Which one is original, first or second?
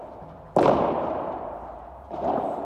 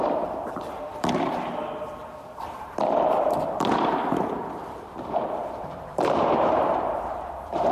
first